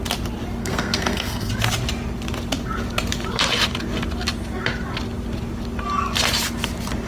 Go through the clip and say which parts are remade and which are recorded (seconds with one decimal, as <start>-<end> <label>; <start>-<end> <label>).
0.0-0.6 recorded; 0.6-1.5 remade; 1.5-7.1 recorded